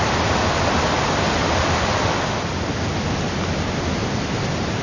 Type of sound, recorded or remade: recorded